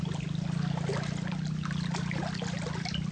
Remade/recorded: recorded